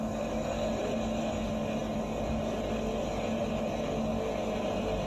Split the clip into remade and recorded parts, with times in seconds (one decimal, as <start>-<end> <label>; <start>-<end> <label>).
0.0-5.1 recorded